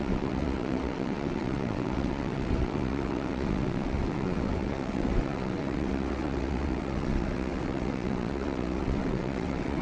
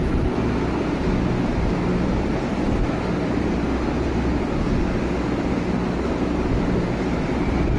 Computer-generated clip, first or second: first